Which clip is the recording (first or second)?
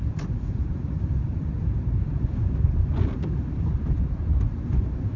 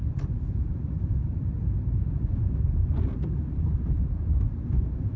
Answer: second